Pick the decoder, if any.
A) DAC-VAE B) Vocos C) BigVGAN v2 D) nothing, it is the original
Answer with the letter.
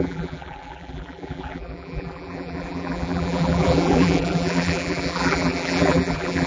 C